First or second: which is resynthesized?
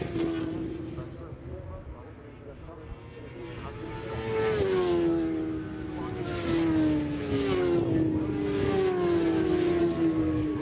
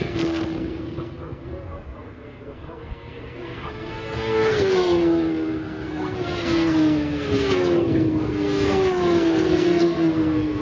second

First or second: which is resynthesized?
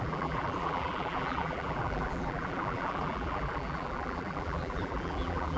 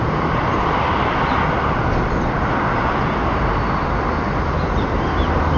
first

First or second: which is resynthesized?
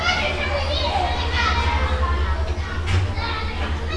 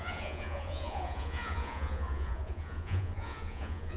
second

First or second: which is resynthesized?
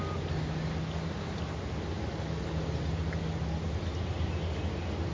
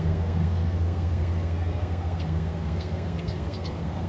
second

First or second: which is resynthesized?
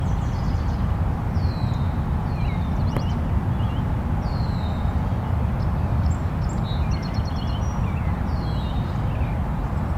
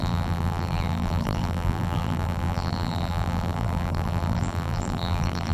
second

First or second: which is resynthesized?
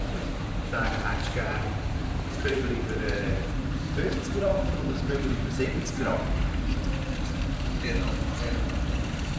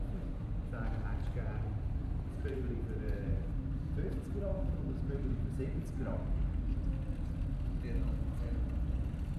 first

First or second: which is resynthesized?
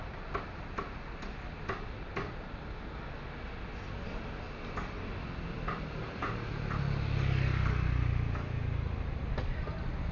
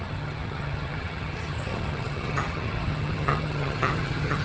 second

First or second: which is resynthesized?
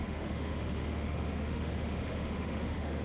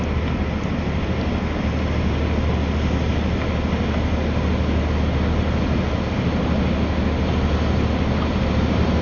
first